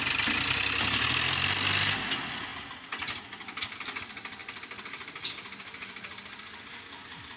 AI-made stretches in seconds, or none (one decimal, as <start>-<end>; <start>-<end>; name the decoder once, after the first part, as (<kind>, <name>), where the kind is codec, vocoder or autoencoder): none